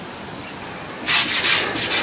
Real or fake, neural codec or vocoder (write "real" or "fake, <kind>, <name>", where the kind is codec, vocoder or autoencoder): real